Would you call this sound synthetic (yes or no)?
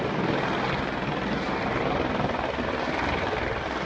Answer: no